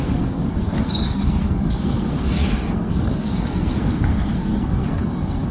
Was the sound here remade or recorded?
remade